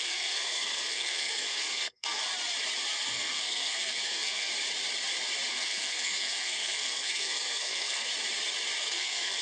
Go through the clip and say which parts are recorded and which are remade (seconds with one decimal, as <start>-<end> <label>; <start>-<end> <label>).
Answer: 0.0-2.2 remade; 2.2-3.0 recorded; 3.0-4.5 remade; 4.5-5.5 recorded; 5.5-8.1 remade; 8.1-8.8 recorded; 8.8-9.4 remade

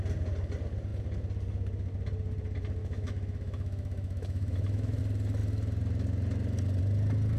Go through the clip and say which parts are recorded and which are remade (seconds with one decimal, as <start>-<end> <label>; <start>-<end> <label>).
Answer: 0.0-2.8 recorded; 2.8-5.0 remade; 5.0-7.4 recorded

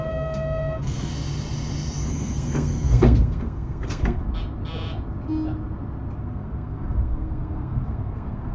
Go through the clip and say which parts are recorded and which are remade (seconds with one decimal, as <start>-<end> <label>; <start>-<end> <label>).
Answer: 0.0-1.1 remade; 1.1-2.1 recorded; 2.1-4.2 remade; 4.2-6.2 recorded; 6.2-8.5 remade